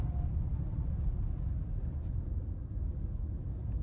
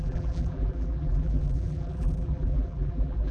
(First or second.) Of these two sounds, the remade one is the second